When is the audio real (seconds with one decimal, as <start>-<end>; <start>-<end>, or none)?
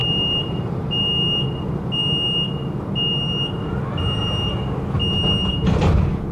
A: 1.0-6.3